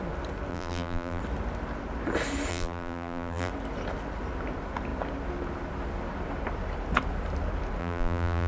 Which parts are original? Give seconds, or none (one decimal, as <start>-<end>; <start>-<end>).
0.0-0.5; 1.2-2.5; 3.5-7.8